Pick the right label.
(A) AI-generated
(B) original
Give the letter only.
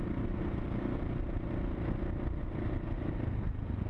B